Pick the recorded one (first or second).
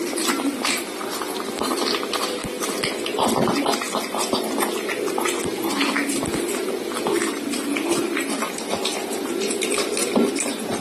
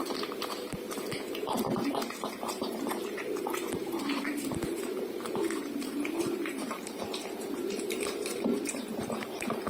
first